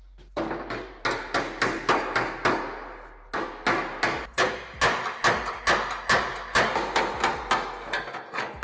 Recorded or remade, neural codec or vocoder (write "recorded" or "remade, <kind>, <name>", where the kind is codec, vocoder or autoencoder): recorded